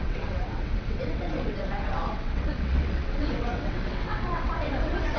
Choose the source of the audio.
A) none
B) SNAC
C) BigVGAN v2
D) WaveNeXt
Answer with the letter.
D